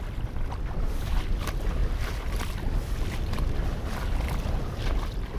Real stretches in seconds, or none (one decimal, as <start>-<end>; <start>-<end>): 0.0-5.4